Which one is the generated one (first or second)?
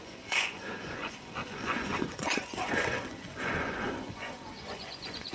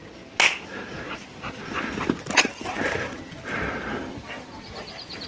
first